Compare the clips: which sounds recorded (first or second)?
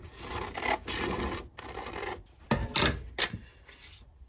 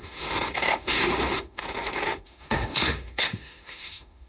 first